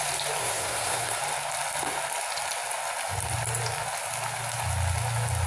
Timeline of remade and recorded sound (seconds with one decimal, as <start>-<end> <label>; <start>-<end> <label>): 0.0-0.4 recorded; 0.4-1.2 remade; 1.2-5.5 recorded